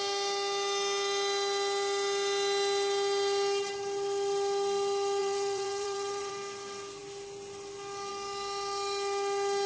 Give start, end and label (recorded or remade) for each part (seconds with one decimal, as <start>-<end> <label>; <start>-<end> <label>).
0.0-5.2 recorded; 5.2-6.3 remade; 6.3-9.7 recorded